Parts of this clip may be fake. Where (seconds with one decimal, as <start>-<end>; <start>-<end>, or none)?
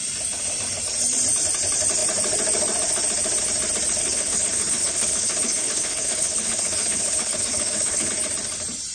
4.0-8.1